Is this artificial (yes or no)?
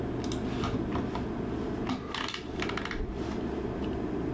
no